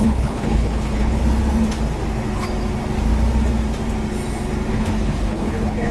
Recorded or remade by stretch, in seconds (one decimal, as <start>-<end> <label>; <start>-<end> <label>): 0.0-1.2 remade; 1.2-4.7 recorded; 4.7-5.9 remade